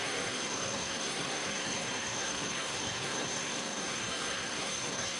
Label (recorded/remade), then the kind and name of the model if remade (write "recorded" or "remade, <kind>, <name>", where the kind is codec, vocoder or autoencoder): remade, codec, SNAC